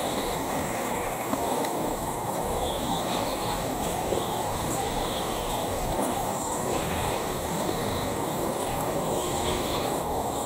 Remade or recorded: remade